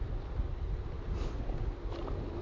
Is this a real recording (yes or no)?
yes